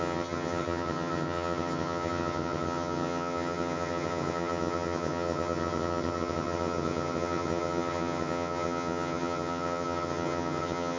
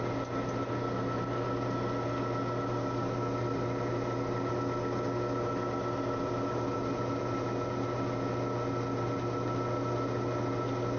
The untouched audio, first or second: second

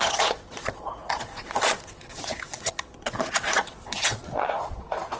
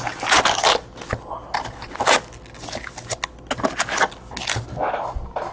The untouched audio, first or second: second